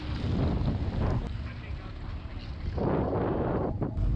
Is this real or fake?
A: real